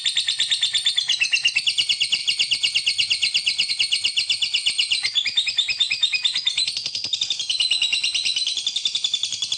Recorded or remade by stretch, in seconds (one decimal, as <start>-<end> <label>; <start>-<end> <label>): 0.0-9.6 recorded